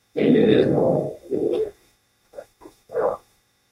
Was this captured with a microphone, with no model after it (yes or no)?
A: no